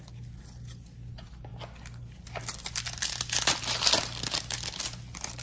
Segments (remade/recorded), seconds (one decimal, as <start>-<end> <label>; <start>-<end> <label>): 0.0-5.4 recorded